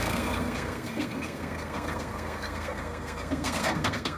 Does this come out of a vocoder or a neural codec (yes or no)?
yes